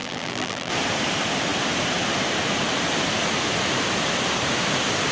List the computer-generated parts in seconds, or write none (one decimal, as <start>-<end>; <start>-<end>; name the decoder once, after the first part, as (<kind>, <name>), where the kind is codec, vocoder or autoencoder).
0.0-0.7 (vocoder, BigVGAN v2)